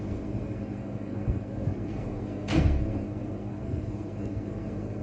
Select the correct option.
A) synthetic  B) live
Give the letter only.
A